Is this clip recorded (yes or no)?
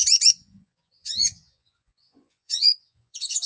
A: no